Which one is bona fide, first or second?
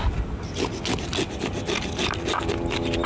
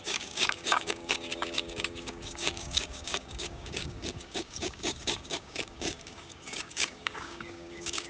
first